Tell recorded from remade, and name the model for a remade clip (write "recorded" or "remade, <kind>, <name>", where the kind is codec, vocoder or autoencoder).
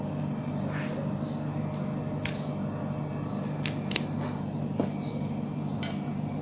recorded